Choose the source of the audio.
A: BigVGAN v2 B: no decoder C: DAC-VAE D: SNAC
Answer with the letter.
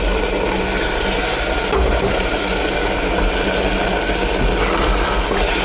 B